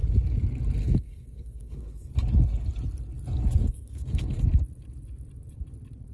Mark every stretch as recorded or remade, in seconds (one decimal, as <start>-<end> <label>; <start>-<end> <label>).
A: 0.0-0.8 recorded; 0.8-2.1 remade; 2.1-3.6 recorded; 3.6-4.4 remade; 4.4-6.1 recorded